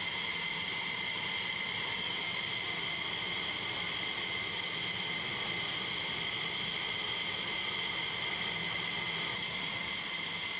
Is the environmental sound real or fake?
real